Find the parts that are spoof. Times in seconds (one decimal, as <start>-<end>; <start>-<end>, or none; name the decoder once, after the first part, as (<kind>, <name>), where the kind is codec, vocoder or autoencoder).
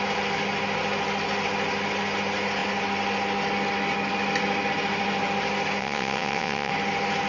5.8-6.7 (vocoder, WaveNeXt)